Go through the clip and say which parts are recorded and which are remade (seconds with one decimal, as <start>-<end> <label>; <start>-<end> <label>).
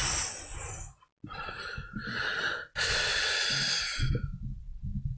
0.0-5.2 recorded